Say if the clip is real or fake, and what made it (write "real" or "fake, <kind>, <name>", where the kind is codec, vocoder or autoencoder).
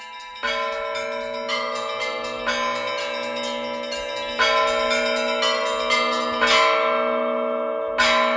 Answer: real